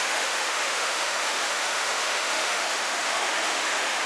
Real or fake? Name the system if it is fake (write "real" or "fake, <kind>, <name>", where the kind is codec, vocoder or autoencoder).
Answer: fake, autoencoder, DAC-VAE